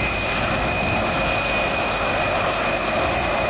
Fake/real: real